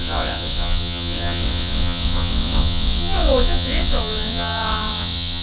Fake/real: fake